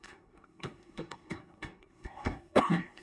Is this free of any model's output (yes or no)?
no